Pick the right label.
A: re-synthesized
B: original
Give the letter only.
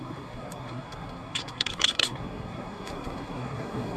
A